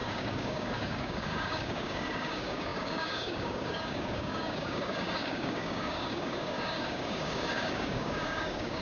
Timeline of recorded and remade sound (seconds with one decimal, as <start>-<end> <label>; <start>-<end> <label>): 0.0-8.8 remade